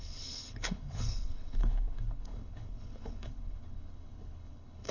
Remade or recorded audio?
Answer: remade